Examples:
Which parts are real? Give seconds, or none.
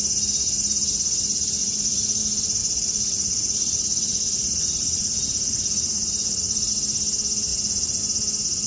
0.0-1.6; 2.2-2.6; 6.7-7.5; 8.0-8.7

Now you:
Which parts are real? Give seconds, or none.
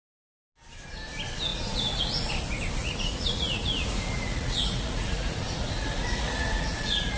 0.0-1.5; 2.3-2.8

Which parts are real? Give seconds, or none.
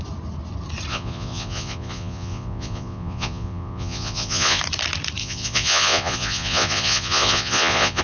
0.0-0.9; 4.6-5.2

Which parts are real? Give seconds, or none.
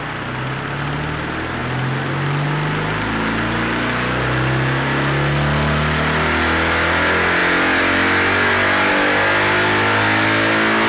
0.0-10.9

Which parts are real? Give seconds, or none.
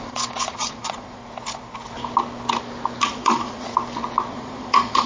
1.2-3.1; 3.7-4.3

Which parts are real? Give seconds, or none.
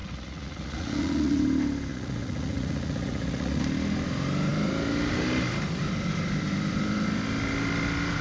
1.4-1.9; 3.6-8.2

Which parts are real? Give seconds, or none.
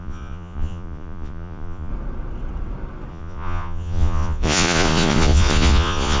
1.9-3.1